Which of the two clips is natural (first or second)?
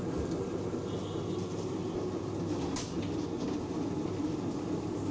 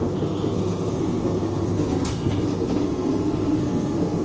first